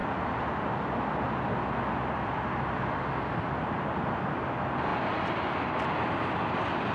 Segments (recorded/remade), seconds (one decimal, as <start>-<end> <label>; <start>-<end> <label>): 0.0-6.9 recorded